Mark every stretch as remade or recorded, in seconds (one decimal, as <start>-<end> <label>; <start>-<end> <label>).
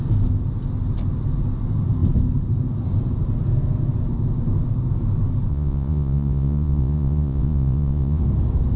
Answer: 0.0-5.5 recorded; 5.5-8.2 remade; 8.2-8.8 recorded